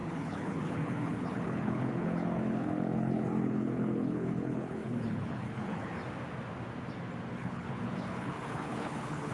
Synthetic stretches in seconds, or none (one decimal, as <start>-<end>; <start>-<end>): 0.0-6.0; 7.3-9.3